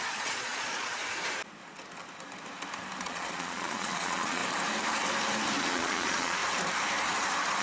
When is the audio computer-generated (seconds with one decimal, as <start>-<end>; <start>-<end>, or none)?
0.0-1.0; 3.0-4.4; 5.6-6.4